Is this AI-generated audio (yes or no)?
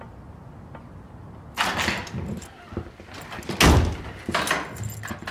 no